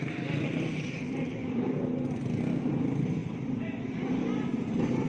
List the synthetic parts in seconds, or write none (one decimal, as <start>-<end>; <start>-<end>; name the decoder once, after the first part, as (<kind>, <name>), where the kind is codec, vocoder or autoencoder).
1.3-1.9 (vocoder, BigVGAN v2); 3.2-3.8